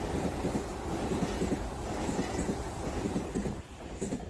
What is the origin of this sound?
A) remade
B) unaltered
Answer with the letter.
B